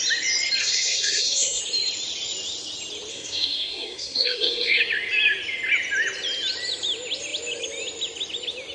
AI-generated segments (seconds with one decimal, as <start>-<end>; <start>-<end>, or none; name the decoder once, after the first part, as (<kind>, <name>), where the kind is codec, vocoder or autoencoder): 0.6-1.6 (codec, SNAC); 3.1-4.8